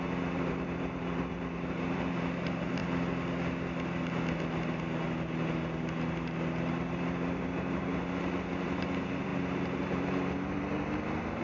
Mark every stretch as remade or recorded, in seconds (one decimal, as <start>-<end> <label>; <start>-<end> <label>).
0.0-2.8 remade; 2.8-6.7 recorded; 6.7-11.4 remade